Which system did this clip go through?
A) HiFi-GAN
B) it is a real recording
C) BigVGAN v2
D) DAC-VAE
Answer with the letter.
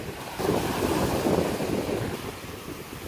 B